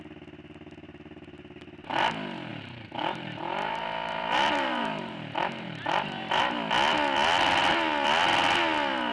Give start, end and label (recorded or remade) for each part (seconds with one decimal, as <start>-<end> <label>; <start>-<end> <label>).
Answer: 0.0-2.5 recorded; 2.5-6.4 remade; 6.4-9.1 recorded

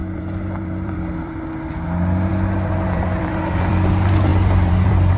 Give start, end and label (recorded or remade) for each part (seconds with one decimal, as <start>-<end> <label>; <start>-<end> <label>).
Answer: 0.0-1.4 remade; 1.4-2.3 recorded; 2.3-3.9 remade; 3.9-4.3 recorded; 4.3-5.2 remade

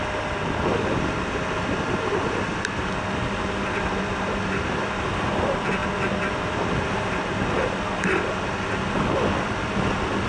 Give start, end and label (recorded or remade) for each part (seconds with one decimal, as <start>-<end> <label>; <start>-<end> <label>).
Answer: 0.0-10.3 recorded

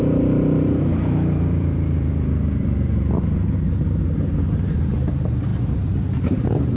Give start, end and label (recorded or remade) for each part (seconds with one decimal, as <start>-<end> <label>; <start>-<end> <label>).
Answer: 0.0-6.8 remade